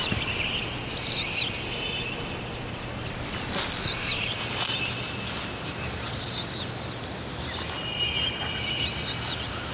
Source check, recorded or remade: recorded